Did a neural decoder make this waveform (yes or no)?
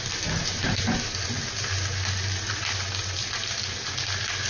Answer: no